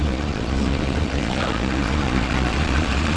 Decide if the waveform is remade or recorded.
remade